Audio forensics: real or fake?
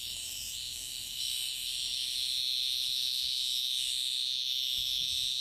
fake